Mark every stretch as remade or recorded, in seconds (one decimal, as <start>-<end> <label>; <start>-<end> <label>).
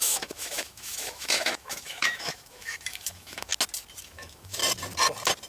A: 0.0-3.5 remade; 3.5-4.0 recorded; 4.0-4.6 remade; 4.6-5.5 recorded